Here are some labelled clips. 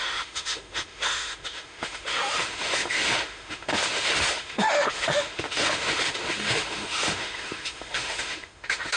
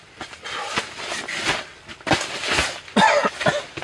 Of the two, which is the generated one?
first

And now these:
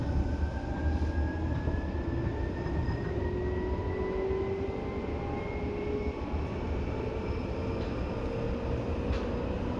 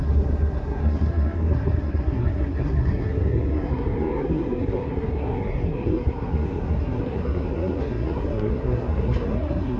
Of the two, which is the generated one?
second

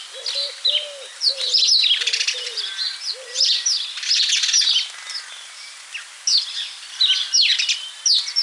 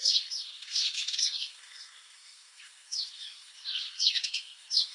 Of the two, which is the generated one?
second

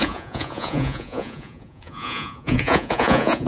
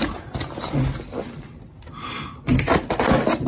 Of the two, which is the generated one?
first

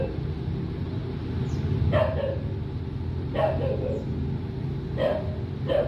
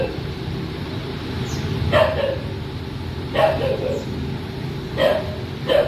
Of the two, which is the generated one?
second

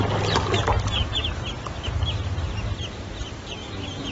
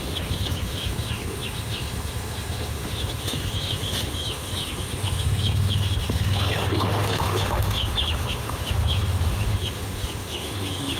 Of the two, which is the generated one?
second